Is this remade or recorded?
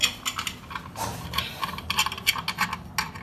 recorded